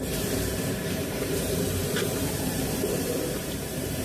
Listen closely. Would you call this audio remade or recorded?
remade